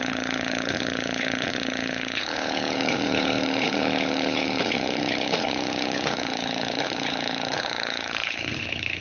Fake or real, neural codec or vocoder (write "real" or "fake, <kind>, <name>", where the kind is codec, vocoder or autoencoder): fake, codec, HILCodec